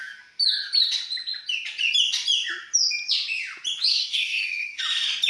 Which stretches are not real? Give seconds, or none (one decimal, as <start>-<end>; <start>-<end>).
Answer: 3.9-4.8